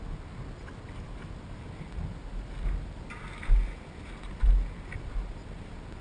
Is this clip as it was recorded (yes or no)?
yes